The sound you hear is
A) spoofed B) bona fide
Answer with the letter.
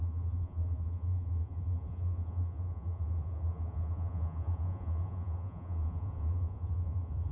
A